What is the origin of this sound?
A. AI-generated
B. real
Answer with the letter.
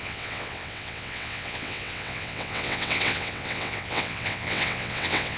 A